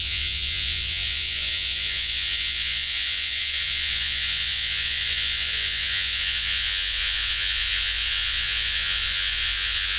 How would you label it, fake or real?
fake